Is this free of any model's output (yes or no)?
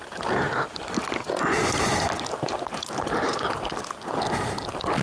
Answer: yes